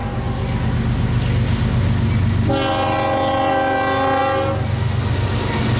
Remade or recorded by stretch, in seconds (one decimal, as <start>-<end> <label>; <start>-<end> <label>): 0.0-5.8 recorded